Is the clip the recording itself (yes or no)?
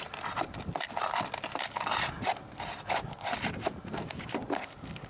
no